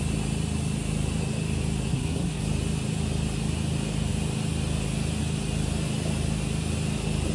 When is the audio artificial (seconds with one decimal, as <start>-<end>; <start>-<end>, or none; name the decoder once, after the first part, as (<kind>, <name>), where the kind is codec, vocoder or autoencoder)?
1.9-2.4 (codec, SNAC)